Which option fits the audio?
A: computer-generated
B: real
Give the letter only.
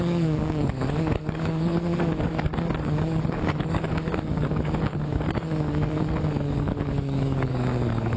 A